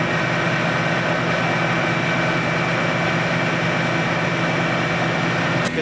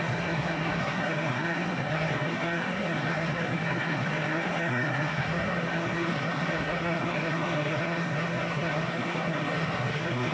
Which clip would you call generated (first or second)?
second